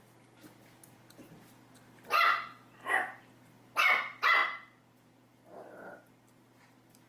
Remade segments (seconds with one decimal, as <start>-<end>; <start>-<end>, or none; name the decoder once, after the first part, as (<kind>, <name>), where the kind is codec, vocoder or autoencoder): none